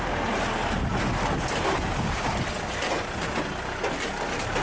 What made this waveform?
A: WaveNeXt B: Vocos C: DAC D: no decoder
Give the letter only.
D